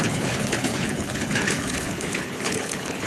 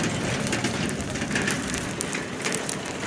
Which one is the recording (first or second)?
second